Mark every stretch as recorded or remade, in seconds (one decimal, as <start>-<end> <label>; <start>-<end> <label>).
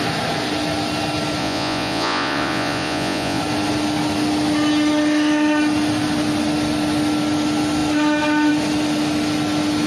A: 0.0-1.4 recorded; 1.4-3.4 remade; 3.4-9.9 recorded